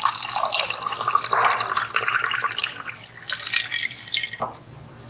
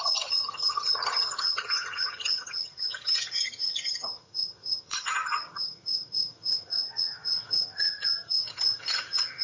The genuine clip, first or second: first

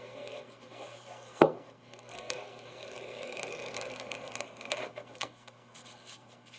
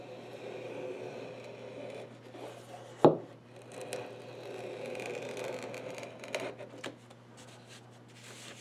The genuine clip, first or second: second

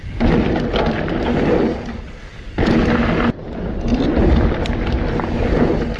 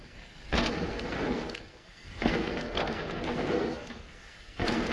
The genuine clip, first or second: first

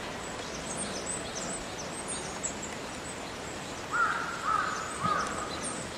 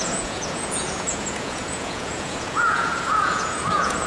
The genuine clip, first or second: first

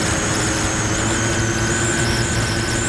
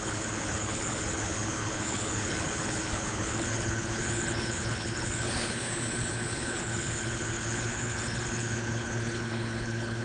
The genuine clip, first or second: first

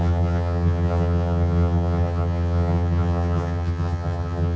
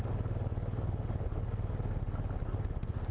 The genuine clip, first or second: second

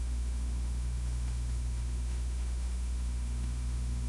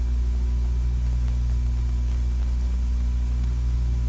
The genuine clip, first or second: second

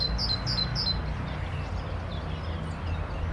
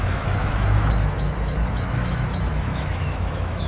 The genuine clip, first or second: first